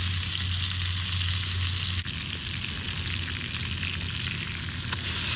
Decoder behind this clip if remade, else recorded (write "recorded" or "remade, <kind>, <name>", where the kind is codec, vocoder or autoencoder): recorded